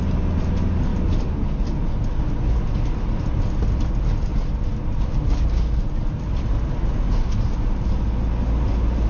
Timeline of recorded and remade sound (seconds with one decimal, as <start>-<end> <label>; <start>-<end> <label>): 0.0-9.1 recorded